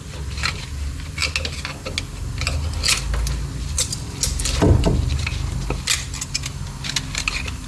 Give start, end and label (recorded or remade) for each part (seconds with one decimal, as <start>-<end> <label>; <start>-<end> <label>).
0.0-7.7 recorded